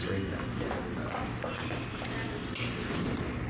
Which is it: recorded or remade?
recorded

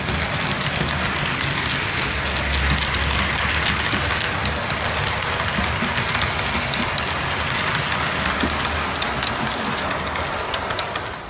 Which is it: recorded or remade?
recorded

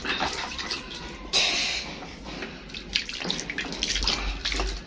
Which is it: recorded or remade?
recorded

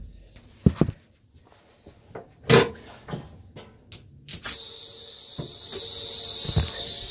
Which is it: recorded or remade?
recorded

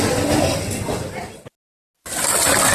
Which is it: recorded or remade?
recorded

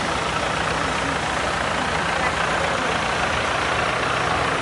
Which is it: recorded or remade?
recorded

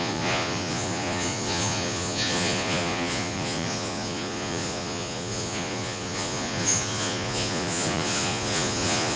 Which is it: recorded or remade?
remade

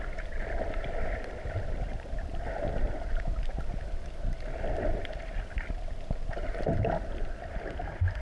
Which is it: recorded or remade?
recorded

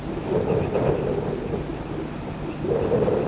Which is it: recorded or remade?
recorded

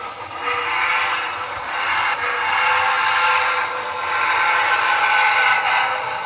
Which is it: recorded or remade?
recorded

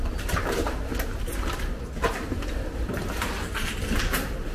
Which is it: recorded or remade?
recorded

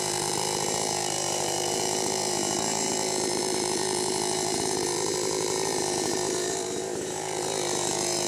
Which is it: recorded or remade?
remade